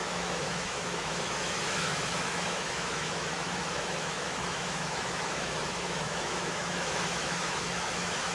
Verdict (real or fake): fake